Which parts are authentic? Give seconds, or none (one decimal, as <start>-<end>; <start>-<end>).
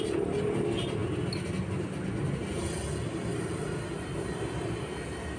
0.0-5.4